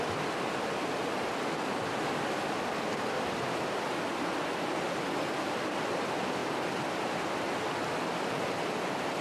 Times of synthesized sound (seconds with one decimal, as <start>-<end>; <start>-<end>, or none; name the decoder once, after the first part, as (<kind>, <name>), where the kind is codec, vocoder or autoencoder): none